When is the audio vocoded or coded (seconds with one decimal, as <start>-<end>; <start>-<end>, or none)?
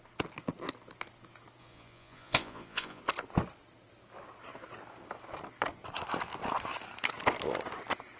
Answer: 1.6-3.0